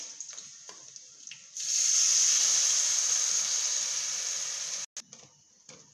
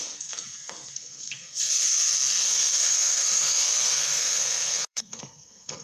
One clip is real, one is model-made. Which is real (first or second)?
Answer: first